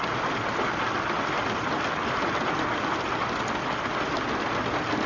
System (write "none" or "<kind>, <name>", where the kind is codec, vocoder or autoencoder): none